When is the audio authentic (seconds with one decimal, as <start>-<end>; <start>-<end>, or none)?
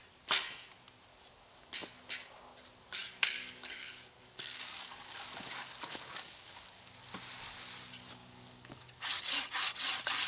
0.0-1.1; 1.7-3.0; 6.9-8.2; 9.2-10.3